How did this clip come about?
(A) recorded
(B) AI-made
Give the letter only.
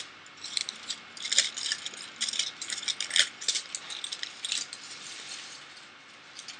A